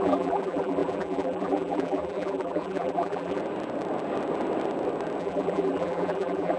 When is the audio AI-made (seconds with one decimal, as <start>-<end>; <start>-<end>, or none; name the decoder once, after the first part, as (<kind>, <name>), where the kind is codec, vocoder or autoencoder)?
0.0-3.4 (vocoder, BigVGAN v2); 5.2-6.6